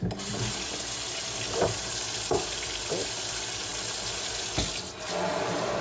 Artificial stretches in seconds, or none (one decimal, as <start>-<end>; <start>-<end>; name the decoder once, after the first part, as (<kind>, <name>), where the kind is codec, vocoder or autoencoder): none